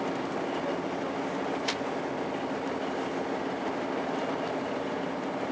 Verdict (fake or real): real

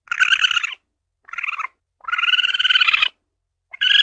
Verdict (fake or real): real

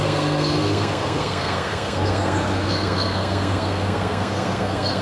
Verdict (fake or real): fake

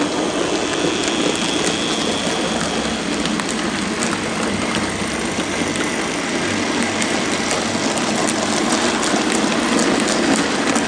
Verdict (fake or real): real